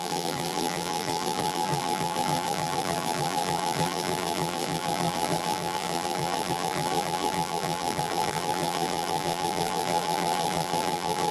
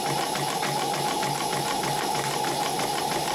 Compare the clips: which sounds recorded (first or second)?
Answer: second